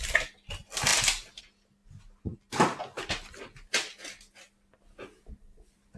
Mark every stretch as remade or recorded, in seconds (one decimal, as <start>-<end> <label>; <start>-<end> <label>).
0.0-6.0 recorded